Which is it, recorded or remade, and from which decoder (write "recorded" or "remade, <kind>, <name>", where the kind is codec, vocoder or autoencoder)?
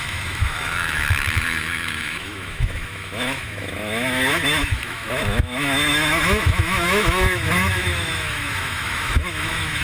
remade, autoencoder, DAC-VAE